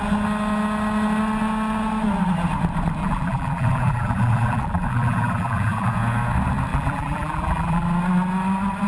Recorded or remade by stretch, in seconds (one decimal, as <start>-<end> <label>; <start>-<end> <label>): 0.0-3.0 recorded; 3.0-5.9 remade; 5.9-6.7 recorded; 6.7-7.8 remade; 7.8-8.9 recorded